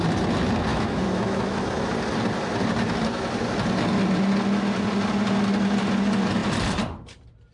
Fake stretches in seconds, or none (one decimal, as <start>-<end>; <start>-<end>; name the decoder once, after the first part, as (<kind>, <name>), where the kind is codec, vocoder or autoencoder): 0.7-1.6 (autoencoder, DAC-VAE)

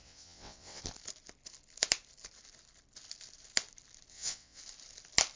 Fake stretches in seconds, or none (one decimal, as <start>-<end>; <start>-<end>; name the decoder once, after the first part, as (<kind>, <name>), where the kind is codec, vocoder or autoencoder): 0.0-0.8 (vocoder, WaveNeXt); 4.1-4.6